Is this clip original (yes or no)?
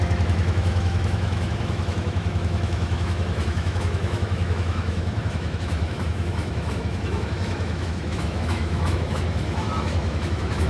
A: no